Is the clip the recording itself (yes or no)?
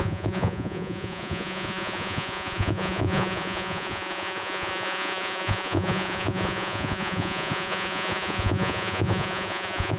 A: no